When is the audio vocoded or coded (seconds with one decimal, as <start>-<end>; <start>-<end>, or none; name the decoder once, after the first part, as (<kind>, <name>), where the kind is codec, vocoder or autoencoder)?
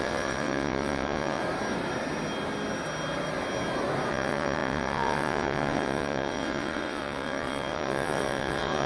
0.0-1.4 (vocoder, WaveNeXt); 4.1-8.9